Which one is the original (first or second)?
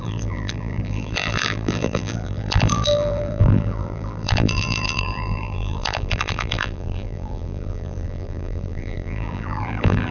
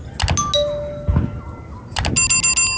second